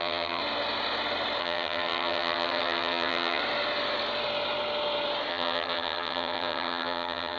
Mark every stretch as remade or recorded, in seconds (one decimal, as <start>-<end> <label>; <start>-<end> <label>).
0.0-0.4 remade; 0.4-1.4 recorded; 1.4-3.4 remade; 3.4-5.3 recorded; 5.3-7.4 remade